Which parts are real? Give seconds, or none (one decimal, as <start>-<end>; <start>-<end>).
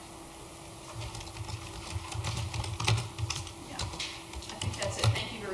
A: 0.0-3.3